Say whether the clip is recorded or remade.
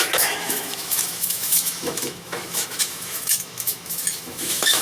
remade